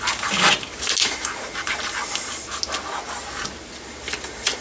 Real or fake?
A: real